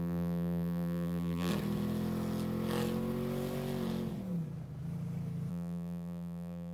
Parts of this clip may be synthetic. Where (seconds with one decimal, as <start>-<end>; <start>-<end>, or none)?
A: 0.0-1.5; 5.5-6.7